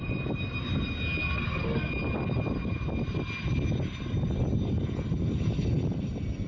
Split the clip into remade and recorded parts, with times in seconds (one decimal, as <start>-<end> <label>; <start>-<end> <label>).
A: 0.0-1.2 recorded; 1.2-1.9 remade; 1.9-6.5 recorded